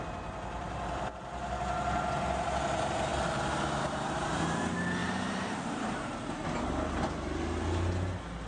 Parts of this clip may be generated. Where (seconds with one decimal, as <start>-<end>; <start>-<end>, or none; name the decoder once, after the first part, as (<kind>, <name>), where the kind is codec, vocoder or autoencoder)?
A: 3.1-4.6 (vocoder, BigVGAN v2); 5.0-6.2